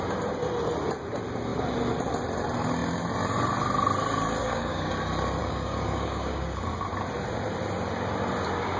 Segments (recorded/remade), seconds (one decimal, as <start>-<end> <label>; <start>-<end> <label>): 0.0-4.4 recorded; 4.4-4.9 remade; 4.9-5.4 recorded; 5.4-6.7 remade; 6.7-8.8 recorded